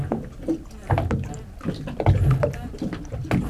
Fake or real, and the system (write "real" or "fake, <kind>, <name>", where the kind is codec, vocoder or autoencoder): real